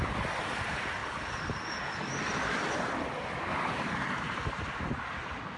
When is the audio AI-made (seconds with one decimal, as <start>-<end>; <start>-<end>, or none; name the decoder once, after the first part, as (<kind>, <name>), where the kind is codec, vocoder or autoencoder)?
none